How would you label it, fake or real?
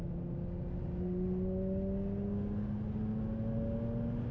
real